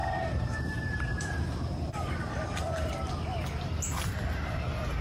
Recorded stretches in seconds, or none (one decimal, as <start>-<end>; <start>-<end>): 2.9-5.0